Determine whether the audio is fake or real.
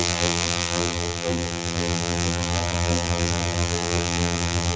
fake